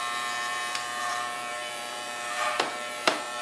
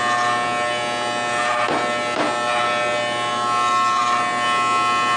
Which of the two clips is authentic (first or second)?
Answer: second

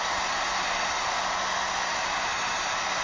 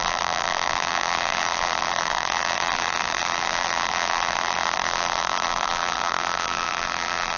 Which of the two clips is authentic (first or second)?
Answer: first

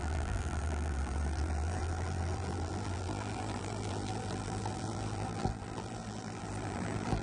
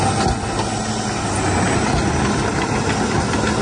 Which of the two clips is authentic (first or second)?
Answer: second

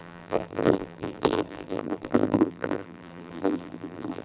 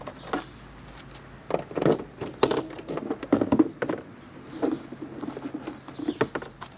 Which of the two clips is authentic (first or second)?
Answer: second